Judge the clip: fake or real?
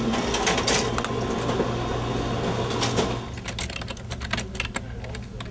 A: real